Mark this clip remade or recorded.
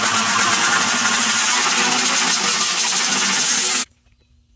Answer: recorded